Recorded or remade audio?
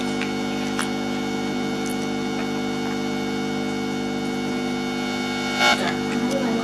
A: recorded